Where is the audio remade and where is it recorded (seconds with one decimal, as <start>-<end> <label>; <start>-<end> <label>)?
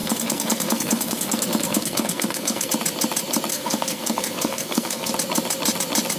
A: 0.0-2.7 remade; 2.7-3.5 recorded; 3.5-5.1 remade; 5.1-6.2 recorded